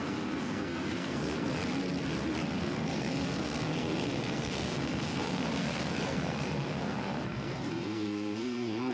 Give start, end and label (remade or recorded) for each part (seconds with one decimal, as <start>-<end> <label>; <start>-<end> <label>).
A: 0.0-1.6 remade; 1.6-2.6 recorded; 2.6-8.9 remade